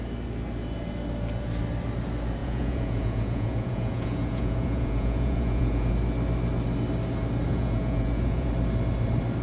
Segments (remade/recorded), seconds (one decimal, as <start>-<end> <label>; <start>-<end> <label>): 0.0-2.4 recorded; 2.4-5.9 remade; 5.9-7.5 recorded; 7.5-8.5 remade; 8.5-9.4 recorded